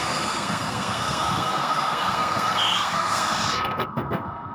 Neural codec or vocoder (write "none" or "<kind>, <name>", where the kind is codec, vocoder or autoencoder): codec, SNAC